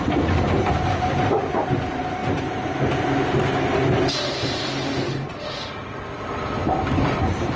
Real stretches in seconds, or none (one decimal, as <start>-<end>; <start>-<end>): 2.2-5.3